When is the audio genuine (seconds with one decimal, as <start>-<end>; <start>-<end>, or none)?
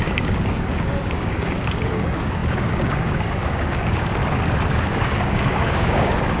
4.2-4.7